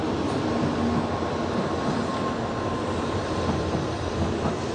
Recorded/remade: recorded